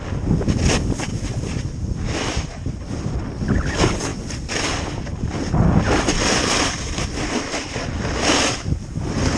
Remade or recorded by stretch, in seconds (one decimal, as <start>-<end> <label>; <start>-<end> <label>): 0.0-1.1 recorded; 1.1-2.8 remade; 2.8-4.1 recorded; 4.1-7.7 remade; 7.7-9.4 recorded